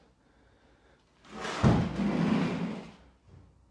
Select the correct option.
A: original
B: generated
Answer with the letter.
A